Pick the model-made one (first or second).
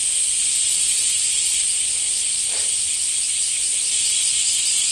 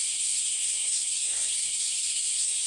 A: second